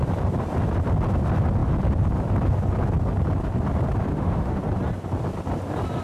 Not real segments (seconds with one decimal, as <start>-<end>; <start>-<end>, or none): 4.1-4.6